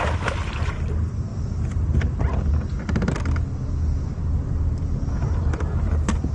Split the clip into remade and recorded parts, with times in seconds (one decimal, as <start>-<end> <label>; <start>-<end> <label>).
0.0-6.3 recorded